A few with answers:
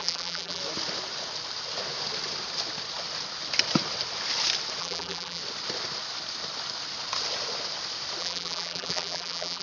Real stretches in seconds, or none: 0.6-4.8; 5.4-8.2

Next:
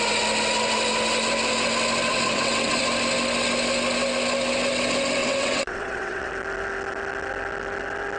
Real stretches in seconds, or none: 0.0-2.1; 2.8-5.2; 6.3-8.2

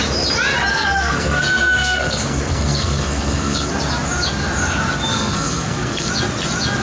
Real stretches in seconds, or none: 0.0-0.7; 3.7-5.1; 6.1-6.8

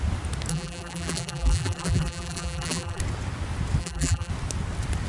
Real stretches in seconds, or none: 0.0-0.5; 3.0-3.8; 4.3-5.1

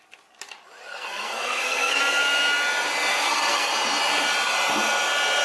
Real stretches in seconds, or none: 0.0-0.9; 2.0-3.1; 3.7-5.4